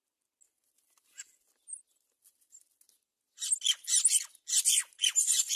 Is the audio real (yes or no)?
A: yes